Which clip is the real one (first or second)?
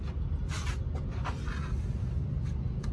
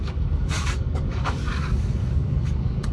first